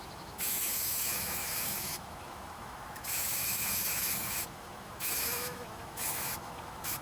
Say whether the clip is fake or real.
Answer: fake